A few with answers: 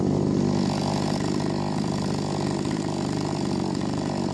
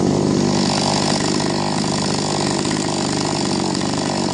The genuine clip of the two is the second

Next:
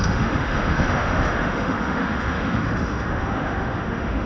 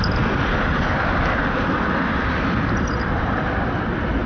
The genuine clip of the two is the second